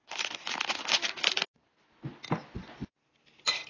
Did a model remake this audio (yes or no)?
no